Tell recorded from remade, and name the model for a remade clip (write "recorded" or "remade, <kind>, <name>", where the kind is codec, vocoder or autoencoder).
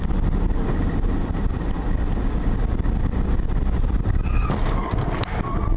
recorded